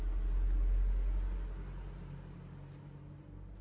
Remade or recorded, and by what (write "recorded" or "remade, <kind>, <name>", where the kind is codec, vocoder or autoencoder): recorded